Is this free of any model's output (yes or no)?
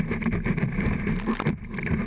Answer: yes